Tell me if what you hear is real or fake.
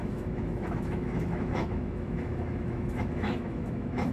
fake